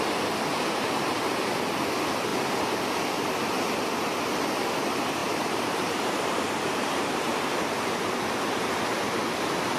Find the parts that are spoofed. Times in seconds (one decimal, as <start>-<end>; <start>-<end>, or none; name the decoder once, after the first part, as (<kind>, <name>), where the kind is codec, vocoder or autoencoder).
0.5-1.2 (vocoder, BigVGAN v2); 5.2-8.2